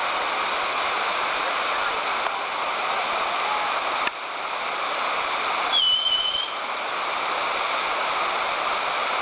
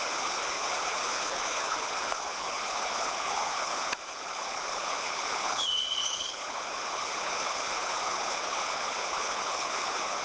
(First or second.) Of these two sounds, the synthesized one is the second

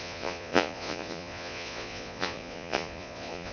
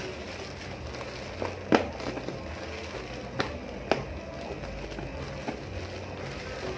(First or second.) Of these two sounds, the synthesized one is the first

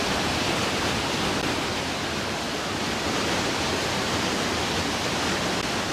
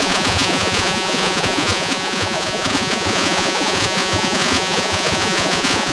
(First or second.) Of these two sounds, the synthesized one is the second